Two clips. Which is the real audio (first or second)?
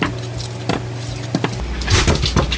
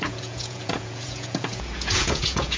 first